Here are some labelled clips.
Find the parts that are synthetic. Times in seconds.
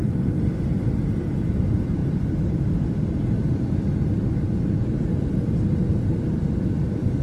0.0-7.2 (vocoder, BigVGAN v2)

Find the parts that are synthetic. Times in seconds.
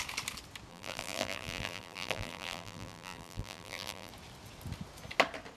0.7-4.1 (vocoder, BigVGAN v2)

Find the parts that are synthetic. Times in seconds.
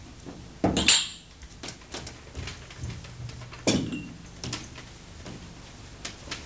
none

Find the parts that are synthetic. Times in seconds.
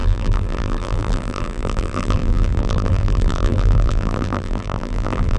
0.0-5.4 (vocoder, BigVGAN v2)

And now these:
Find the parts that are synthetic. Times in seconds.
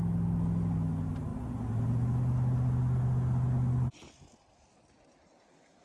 none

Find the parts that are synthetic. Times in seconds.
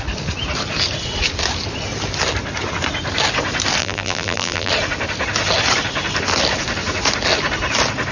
3.8-4.7 (vocoder, BigVGAN v2)